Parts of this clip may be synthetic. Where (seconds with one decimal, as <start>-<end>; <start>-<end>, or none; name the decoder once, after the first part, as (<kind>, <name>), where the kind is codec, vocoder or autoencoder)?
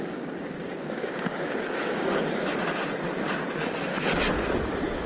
0.0-2.8 (codec, DAC); 3.5-3.9; 4.6-5.1